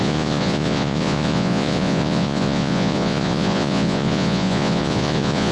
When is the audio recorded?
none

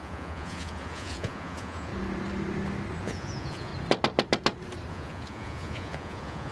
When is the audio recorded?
1.9-3.0; 3.7-4.9

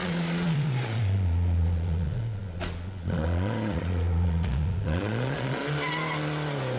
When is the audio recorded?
5.6-6.8

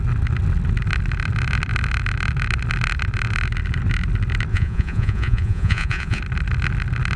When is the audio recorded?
0.0-4.5; 6.2-7.2

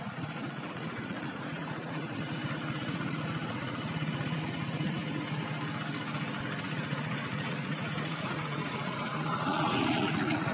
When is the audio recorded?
5.0-6.6

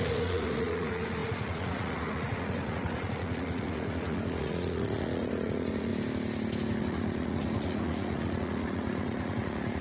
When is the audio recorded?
5.9-6.8

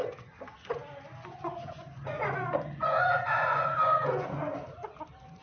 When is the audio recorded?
0.0-1.2; 4.4-5.4